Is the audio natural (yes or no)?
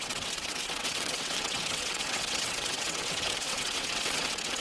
no